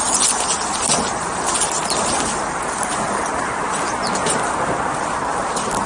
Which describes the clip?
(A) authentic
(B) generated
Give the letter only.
A